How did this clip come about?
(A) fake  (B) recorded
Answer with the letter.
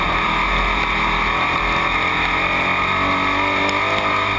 B